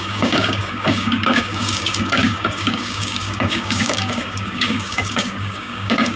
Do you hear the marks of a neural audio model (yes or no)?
yes